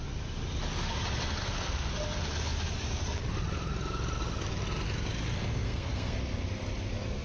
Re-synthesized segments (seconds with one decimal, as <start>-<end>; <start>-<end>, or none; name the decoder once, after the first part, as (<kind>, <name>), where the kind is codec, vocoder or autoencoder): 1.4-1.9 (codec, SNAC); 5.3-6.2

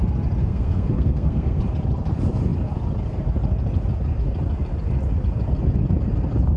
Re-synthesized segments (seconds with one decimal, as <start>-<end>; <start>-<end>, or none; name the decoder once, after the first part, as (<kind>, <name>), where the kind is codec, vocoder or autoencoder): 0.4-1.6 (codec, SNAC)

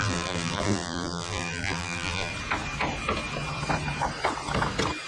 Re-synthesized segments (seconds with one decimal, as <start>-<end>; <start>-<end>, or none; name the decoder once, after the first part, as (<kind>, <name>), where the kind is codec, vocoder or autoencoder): 0.0-2.3 (vocoder, BigVGAN v2)

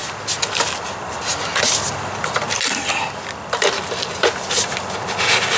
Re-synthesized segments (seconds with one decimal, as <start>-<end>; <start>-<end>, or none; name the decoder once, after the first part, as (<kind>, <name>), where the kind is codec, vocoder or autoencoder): none

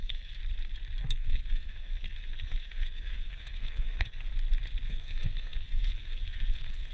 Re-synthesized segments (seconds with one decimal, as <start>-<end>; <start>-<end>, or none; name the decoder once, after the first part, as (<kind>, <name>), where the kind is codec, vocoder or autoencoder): 0.0-0.4 (codec, SNAC); 1.0-4.3; 4.9-6.9

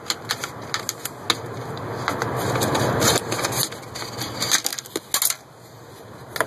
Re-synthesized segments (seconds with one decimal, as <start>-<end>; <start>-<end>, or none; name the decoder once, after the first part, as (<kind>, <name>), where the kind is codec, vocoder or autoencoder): none